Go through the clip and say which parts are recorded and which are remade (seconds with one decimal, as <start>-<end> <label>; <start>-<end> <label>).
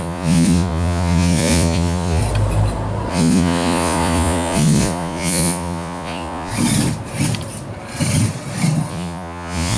0.0-2.2 remade; 2.2-3.1 recorded; 3.1-6.5 remade; 6.5-8.9 recorded; 8.9-9.8 remade